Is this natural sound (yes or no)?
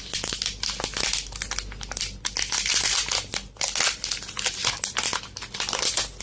yes